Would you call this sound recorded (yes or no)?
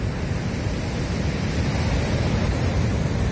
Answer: yes